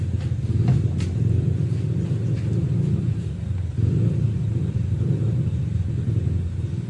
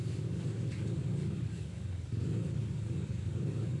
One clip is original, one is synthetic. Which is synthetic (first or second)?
second